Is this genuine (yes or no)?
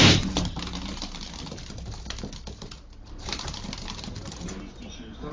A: yes